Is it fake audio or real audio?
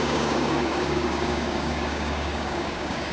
fake